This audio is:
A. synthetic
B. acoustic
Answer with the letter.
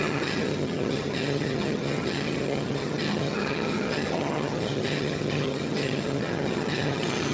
A